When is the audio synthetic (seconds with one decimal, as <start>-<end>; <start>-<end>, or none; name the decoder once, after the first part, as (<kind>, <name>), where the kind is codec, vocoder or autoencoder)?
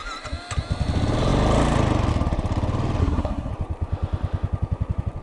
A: 3.0-3.5 (codec, SNAC)